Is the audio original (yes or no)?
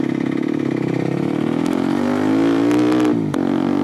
yes